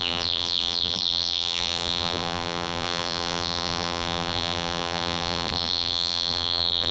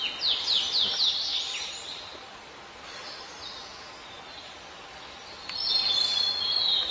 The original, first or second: second